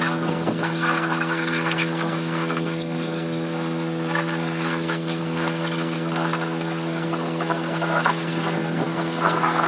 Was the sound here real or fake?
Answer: fake